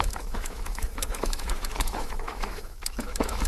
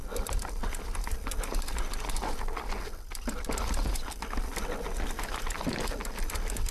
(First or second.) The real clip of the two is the second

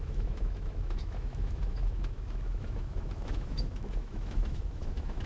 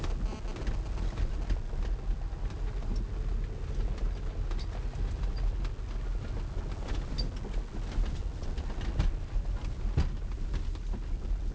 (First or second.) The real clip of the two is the second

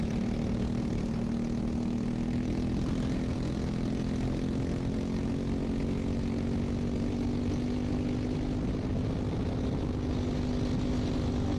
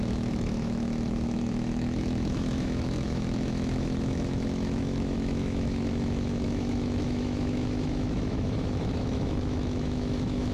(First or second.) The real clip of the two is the first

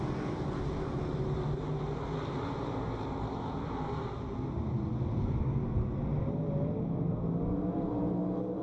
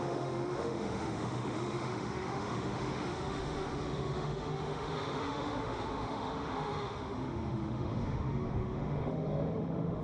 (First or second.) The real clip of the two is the first